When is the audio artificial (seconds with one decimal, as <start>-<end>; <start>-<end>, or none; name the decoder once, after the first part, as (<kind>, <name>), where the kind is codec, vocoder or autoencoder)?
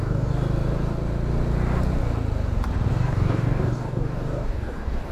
0.0-0.4 (codec, DAC); 2.9-5.1